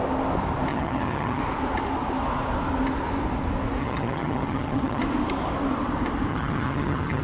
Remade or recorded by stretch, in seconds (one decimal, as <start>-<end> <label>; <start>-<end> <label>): 0.0-0.7 recorded; 0.7-1.4 remade; 1.4-3.8 recorded; 3.8-5.0 remade; 5.0-6.3 recorded; 6.3-7.2 remade